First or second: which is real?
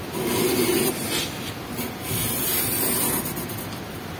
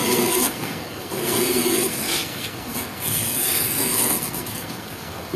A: first